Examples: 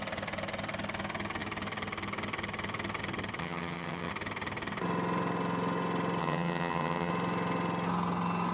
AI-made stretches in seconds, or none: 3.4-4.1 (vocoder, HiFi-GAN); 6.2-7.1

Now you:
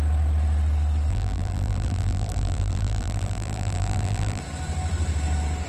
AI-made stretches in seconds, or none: 1.1-4.4 (vocoder, BigVGAN v2)

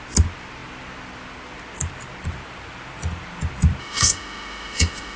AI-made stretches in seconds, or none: 3.8-5.2 (autoencoder, DAC-VAE)

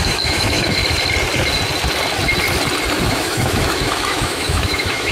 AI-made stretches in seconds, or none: 0.0-0.8 (autoencoder, DAC-VAE); 3.0-5.1

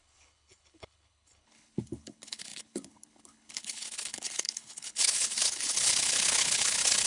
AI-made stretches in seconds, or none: 0.0-7.1 (codec, HILCodec)

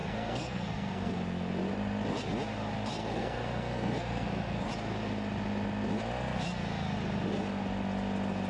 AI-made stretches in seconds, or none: 0.0-1.1 (codec, SNAC); 3.0-4.6

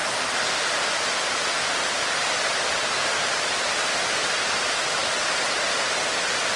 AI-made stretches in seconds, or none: 5.0-5.6 (vocoder, BigVGAN v2)

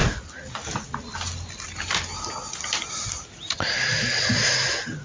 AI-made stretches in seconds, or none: none